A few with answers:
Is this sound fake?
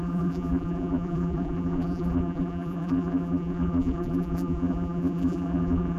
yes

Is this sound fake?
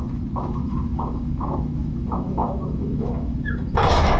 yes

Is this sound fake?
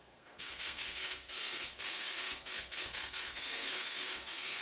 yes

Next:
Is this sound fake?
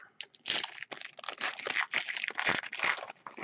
no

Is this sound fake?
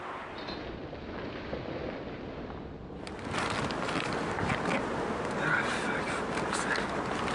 no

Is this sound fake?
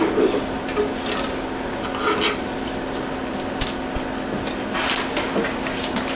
no